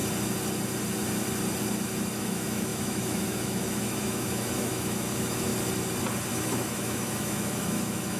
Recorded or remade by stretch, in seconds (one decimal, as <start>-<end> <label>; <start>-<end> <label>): 0.0-2.2 recorded; 2.2-5.5 remade; 5.5-6.3 recorded; 6.3-8.2 remade